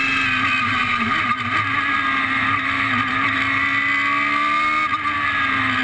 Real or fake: real